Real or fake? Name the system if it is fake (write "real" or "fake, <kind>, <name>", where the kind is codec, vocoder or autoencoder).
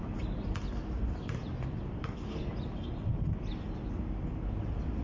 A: real